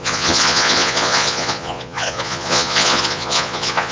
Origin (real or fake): fake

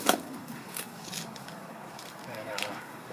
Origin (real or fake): fake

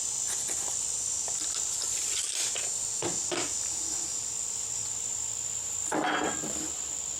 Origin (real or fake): real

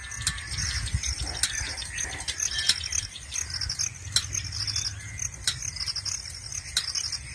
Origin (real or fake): real